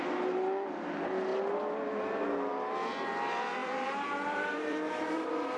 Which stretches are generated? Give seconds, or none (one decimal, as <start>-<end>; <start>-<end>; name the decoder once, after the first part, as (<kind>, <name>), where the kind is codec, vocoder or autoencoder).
3.6-5.6 (vocoder, BigVGAN v2)